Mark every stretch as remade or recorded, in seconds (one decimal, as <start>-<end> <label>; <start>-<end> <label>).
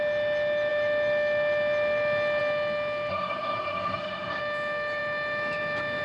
0.0-3.1 recorded; 3.1-4.4 remade; 4.4-6.0 recorded